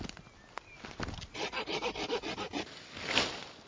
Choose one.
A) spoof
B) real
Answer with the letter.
B